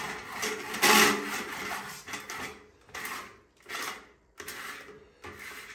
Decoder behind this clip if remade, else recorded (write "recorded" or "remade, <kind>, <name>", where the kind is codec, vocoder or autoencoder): recorded